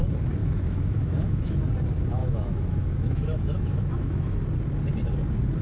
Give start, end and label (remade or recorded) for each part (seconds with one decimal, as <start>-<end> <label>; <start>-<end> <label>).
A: 0.0-0.4 recorded; 0.4-1.6 remade; 1.6-2.2 recorded; 2.2-4.4 remade; 4.4-5.6 recorded